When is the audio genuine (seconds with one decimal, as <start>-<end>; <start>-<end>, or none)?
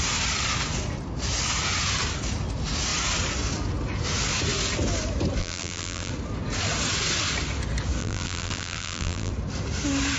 0.0-5.4; 6.1-8.0; 9.3-10.2